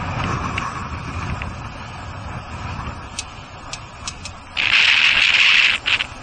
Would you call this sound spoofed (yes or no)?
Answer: no